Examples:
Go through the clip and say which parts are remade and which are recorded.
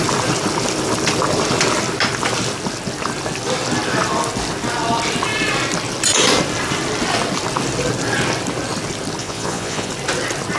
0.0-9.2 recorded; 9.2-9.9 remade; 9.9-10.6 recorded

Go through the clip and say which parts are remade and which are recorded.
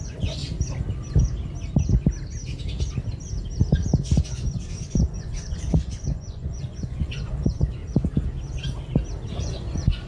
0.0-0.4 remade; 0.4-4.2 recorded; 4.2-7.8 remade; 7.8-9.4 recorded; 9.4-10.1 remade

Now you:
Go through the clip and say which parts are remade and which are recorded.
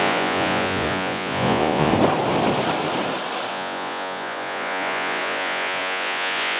0.0-1.9 remade; 1.9-3.5 recorded; 3.5-6.6 remade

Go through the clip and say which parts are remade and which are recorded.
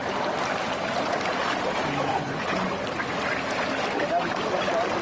0.0-2.1 recorded; 2.1-2.7 remade; 2.7-5.0 recorded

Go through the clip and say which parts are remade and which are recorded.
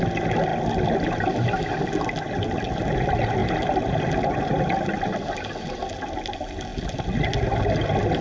0.0-8.2 recorded